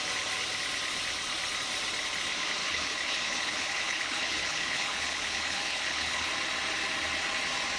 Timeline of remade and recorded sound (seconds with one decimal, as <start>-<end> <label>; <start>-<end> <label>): 0.0-2.6 recorded; 2.6-6.3 remade; 6.3-7.8 recorded